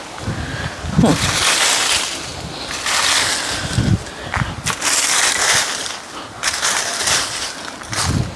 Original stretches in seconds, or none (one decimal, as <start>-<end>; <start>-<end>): 0.0-6.4; 7.0-8.4